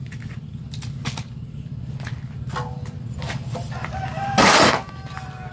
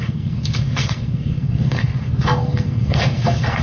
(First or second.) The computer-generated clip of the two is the second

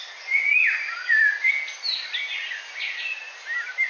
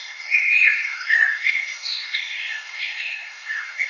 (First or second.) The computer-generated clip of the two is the second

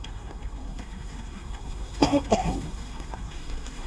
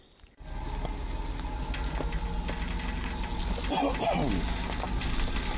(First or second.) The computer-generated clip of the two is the first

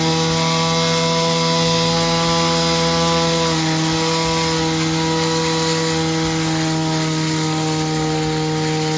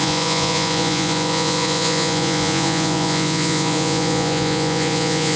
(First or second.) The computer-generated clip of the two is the second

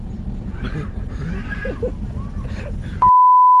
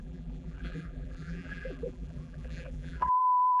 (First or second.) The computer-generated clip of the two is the second